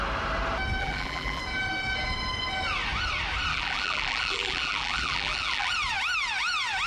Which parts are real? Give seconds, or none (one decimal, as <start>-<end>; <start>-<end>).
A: 0.0-0.8; 1.4-3.5; 5.7-6.9